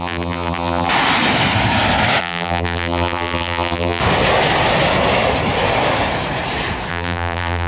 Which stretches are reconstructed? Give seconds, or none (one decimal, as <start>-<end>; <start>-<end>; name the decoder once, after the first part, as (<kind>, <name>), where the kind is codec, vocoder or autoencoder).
0.0-0.9 (vocoder, BigVGAN v2); 2.2-4.0; 6.9-7.7